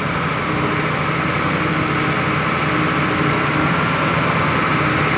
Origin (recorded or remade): recorded